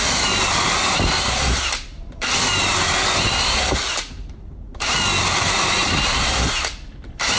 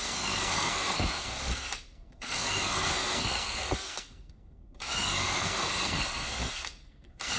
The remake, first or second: second